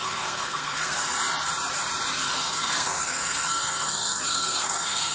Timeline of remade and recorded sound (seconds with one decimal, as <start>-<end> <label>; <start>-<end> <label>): 0.0-1.0 remade; 1.0-2.4 recorded; 2.4-5.1 remade